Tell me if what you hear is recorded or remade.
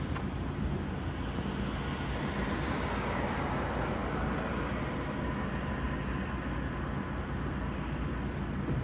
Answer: recorded